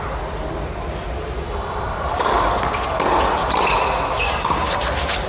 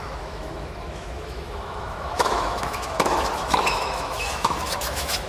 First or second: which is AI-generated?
second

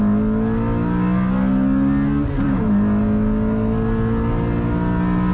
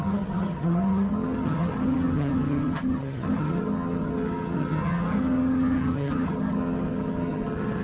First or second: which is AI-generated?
second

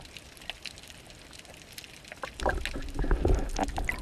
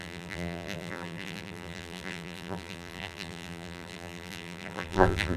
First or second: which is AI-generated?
second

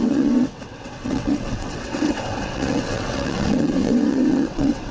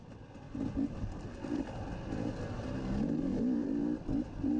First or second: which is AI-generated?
first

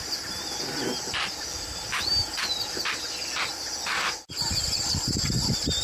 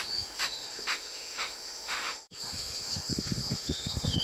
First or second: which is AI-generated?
second